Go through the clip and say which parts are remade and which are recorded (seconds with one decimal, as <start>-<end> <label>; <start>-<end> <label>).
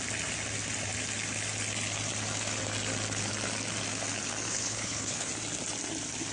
0.0-4.5 recorded; 4.5-5.3 remade; 5.3-6.3 recorded